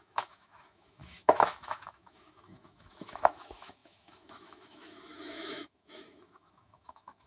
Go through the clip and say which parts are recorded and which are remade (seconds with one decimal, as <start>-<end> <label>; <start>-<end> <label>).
0.0-7.3 remade